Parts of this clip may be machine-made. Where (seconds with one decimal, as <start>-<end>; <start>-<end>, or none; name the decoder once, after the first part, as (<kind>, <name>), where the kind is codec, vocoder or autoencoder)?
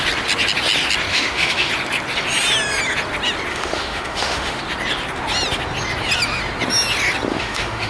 1.1-1.7 (autoencoder, DAC-VAE); 3.5-4.6; 7.3-7.9